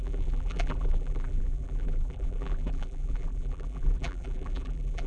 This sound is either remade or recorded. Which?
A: remade